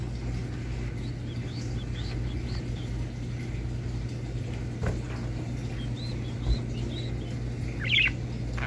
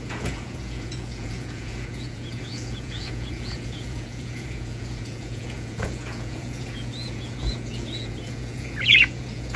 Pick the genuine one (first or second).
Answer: first